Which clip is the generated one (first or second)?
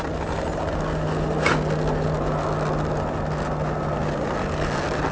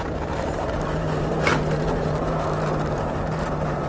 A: second